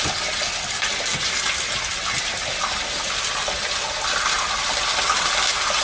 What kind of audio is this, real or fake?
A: real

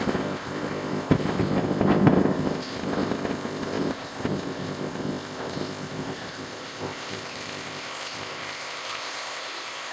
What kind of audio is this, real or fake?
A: fake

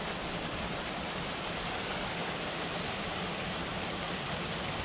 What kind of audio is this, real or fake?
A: real